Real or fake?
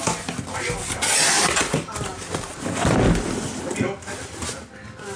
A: real